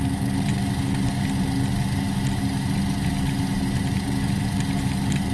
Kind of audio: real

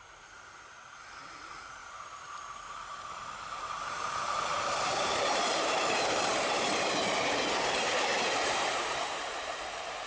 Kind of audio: fake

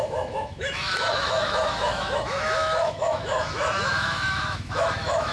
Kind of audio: fake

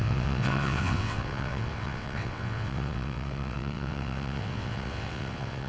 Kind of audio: fake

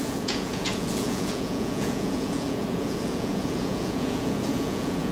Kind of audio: fake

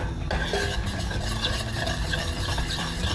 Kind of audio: real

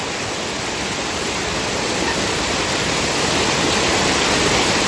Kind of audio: real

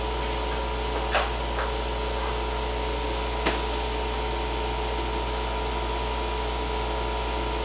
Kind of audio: real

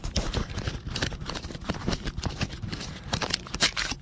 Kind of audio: fake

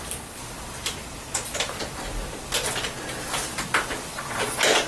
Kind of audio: fake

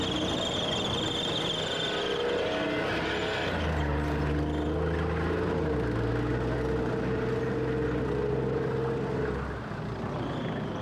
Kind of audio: real